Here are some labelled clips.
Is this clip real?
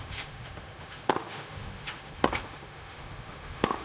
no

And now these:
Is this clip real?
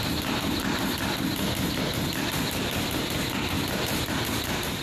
yes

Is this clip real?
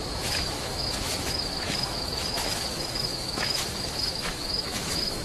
no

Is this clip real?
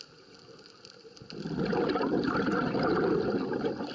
yes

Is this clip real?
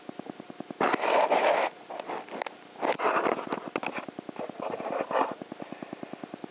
yes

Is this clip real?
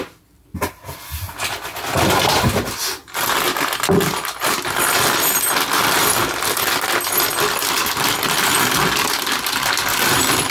yes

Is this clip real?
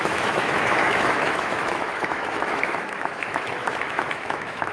no